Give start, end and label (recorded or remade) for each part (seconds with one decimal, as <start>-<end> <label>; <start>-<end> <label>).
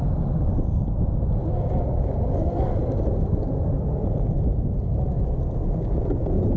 0.0-1.4 recorded; 1.4-4.1 remade; 4.1-6.6 recorded